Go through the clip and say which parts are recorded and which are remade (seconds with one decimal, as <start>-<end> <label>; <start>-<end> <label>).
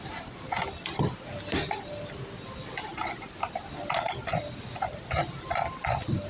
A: 0.0-6.3 recorded